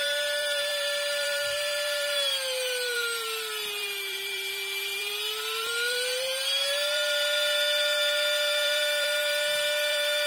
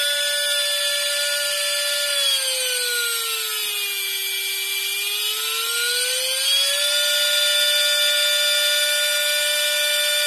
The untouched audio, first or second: second